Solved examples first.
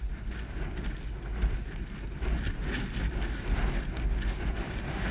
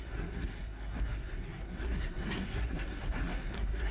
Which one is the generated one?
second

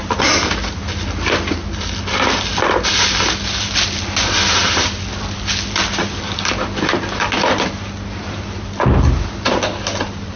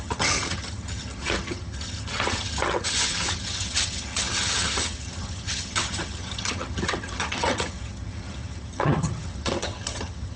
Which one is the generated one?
second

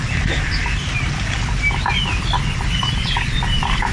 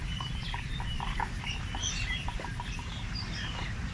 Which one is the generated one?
second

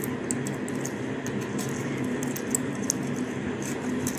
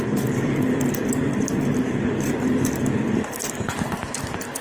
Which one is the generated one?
second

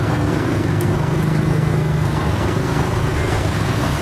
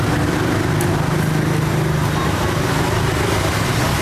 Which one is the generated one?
first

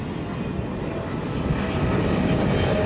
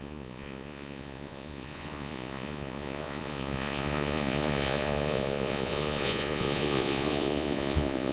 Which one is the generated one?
second